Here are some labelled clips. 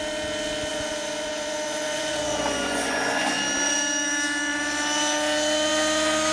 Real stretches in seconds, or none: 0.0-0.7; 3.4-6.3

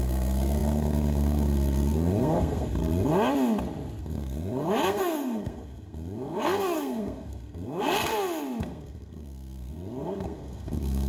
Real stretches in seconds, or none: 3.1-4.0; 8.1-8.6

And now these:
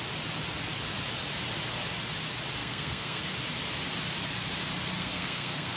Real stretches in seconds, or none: 0.0-2.6; 3.2-5.0